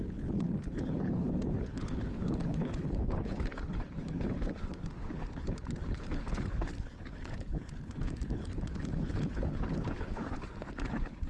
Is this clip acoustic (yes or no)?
no